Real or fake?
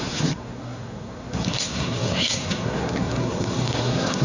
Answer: fake